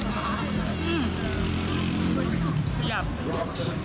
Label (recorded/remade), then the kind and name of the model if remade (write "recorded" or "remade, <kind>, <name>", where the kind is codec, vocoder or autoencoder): recorded